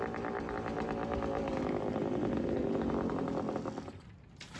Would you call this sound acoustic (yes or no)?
yes